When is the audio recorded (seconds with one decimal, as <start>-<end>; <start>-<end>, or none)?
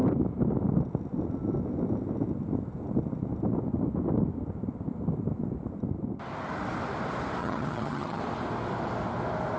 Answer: 0.0-7.4; 8.2-9.6